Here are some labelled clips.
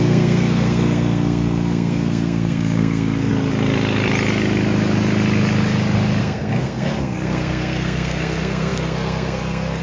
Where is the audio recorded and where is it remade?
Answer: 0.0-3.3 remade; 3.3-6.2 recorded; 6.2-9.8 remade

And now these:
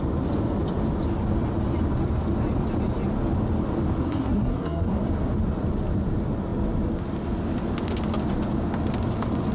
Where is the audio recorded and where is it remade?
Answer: 0.0-4.0 recorded; 4.0-5.0 remade; 5.0-9.5 recorded

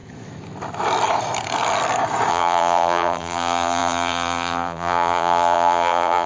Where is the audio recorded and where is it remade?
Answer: 0.0-2.3 recorded; 2.3-6.3 remade

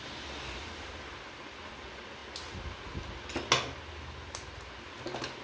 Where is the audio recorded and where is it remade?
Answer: 0.0-5.4 recorded